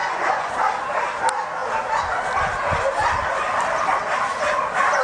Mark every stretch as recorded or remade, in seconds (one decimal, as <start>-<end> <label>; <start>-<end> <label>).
0.0-0.5 remade; 0.5-5.0 recorded